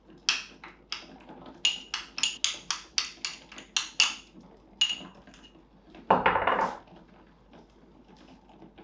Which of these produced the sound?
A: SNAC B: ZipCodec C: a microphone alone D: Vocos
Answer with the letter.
C